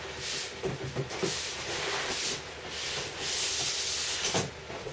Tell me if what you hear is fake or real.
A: real